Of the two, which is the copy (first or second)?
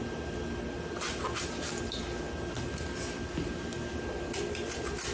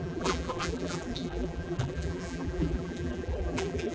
second